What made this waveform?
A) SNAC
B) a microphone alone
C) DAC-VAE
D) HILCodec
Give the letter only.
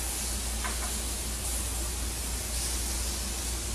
B